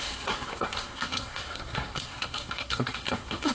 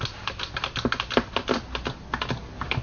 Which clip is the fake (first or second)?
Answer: first